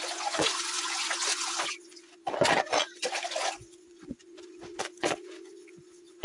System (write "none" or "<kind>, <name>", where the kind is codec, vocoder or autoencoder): vocoder, Vocos